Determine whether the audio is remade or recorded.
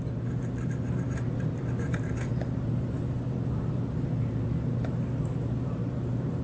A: remade